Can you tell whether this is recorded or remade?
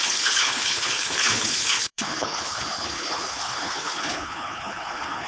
remade